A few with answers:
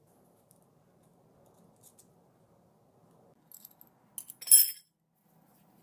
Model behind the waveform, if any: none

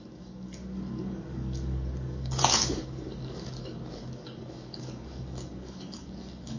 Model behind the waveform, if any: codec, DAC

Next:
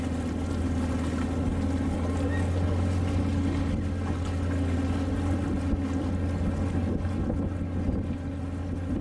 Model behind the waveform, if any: none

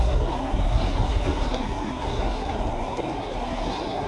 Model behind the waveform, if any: codec, SNAC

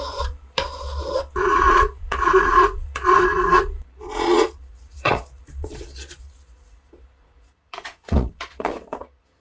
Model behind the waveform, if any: vocoder, Vocos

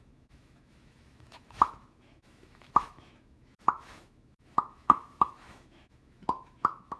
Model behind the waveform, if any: autoencoder, DAC-VAE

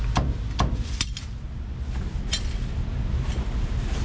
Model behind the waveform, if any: none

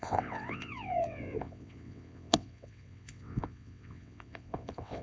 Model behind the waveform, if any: vocoder, WaveNeXt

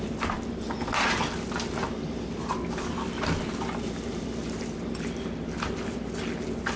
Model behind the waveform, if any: none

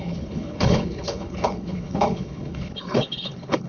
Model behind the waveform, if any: codec, HILCodec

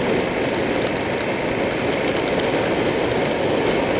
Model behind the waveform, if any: none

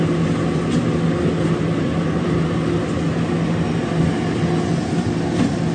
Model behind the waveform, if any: none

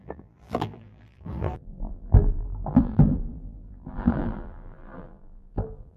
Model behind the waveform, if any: vocoder, BigVGAN v2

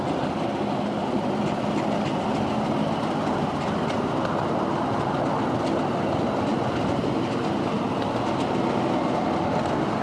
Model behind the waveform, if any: none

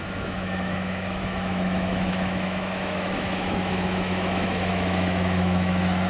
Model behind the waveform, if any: autoencoder, DAC-VAE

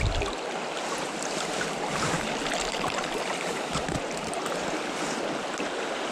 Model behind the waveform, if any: none